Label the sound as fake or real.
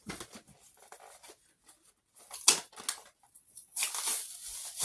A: real